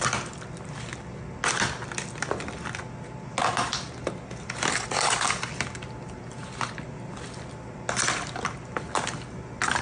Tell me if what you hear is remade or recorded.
recorded